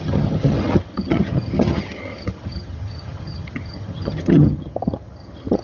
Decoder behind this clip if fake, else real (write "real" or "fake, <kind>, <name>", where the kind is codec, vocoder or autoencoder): fake, vocoder, HiFi-GAN